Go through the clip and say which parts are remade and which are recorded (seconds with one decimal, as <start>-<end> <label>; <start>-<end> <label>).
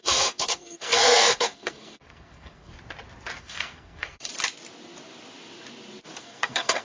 0.0-2.7 remade; 2.7-3.4 recorded; 3.4-4.3 remade; 4.3-6.2 recorded; 6.2-6.8 remade